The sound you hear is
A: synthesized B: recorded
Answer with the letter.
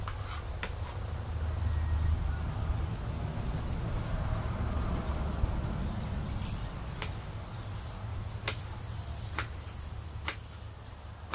B